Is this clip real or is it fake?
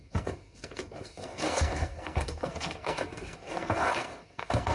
fake